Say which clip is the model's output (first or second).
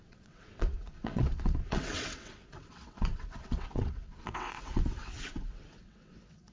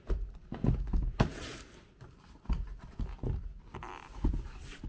first